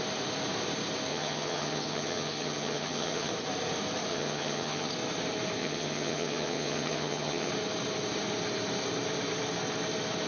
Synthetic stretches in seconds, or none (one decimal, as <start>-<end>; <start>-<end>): 1.1-3.3; 4.1-4.9; 5.6-7.5